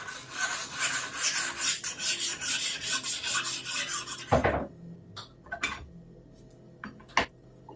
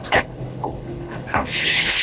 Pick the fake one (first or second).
second